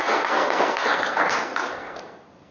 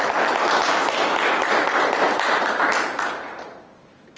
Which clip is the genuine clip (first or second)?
second